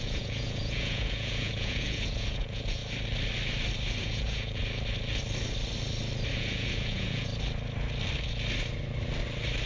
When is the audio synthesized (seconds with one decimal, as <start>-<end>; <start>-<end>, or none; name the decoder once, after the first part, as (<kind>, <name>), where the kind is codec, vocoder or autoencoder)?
0.0-2.8 (vocoder, Vocos); 4.0-4.6; 6.3-7.3